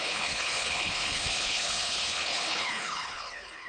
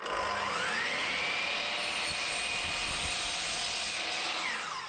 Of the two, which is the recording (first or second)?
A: second